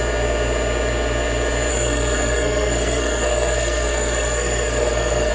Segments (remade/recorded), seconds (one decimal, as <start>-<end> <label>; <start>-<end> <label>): 0.0-1.7 recorded; 1.7-5.3 remade